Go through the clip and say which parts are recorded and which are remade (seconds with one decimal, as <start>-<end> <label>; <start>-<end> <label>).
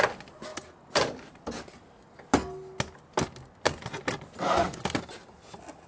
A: 0.0-5.9 recorded